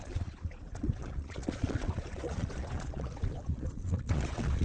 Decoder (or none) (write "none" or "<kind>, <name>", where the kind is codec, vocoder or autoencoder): vocoder, Vocos